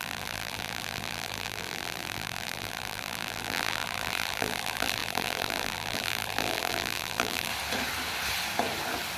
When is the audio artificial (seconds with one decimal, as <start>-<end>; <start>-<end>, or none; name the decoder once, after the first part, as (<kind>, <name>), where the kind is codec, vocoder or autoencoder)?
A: 0.0-7.5 (vocoder, BigVGAN v2)